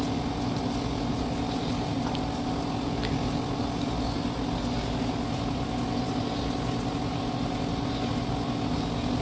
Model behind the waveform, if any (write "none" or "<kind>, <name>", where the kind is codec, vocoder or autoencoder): none